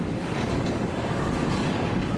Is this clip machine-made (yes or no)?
yes